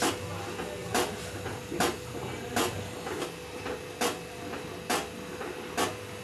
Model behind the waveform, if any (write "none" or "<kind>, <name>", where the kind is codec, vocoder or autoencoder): none